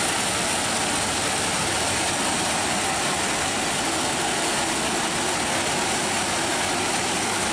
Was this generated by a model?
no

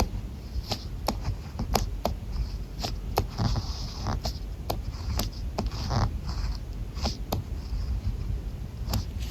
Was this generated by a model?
no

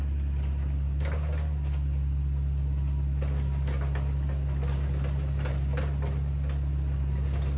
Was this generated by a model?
no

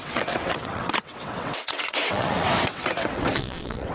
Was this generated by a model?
yes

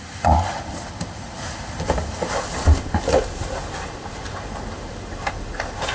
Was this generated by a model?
no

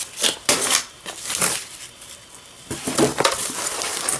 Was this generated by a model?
no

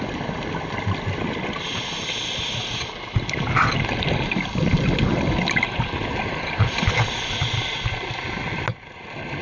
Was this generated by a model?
no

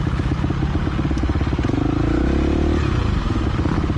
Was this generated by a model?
no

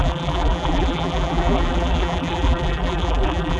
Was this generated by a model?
yes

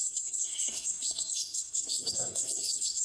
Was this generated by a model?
yes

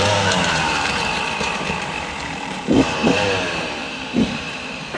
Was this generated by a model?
yes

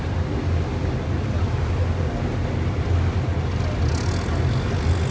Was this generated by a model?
no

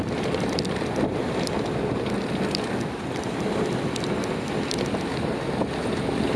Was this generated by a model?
no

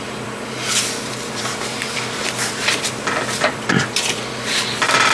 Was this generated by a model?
yes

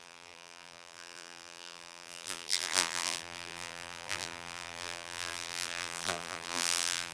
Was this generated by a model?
yes